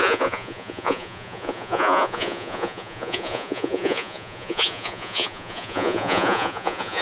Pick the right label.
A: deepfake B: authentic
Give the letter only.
A